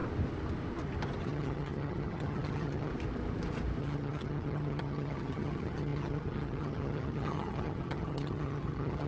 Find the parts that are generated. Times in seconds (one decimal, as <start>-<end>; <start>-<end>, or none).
1.2-2.9; 3.8-9.1